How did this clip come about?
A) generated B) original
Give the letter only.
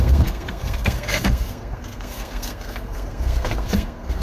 A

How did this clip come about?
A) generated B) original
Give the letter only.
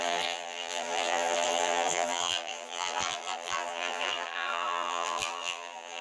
A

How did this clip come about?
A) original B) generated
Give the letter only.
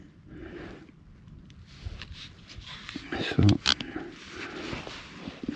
B